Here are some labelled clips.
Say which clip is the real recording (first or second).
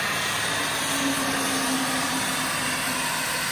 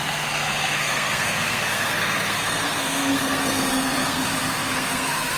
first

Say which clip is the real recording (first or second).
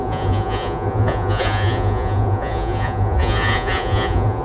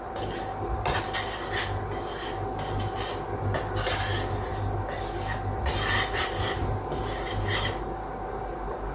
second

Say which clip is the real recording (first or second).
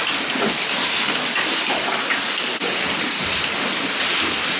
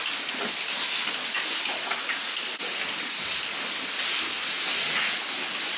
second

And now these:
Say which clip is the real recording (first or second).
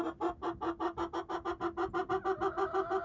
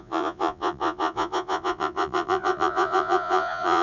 first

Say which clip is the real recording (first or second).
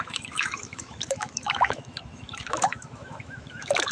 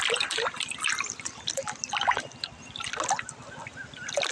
second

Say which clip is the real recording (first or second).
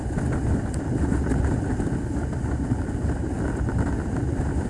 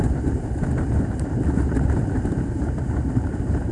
first